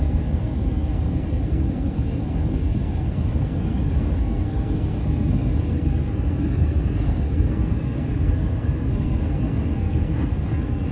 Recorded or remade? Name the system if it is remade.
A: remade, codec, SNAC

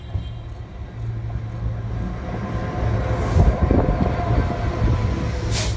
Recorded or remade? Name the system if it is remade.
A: recorded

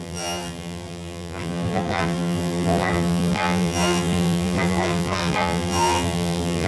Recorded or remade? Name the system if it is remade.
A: remade, vocoder, BigVGAN v2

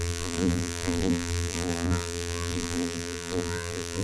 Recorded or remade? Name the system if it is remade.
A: remade, vocoder, BigVGAN v2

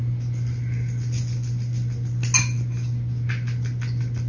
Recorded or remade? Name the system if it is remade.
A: recorded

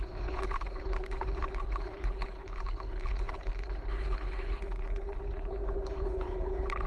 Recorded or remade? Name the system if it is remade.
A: remade, codec, HILCodec